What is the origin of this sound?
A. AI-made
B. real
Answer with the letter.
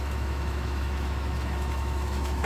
A